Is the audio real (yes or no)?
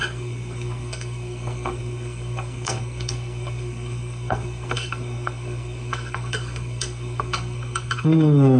no